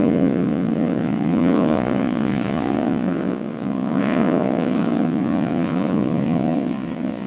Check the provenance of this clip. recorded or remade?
remade